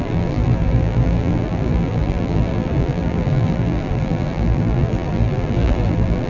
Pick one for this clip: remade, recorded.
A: remade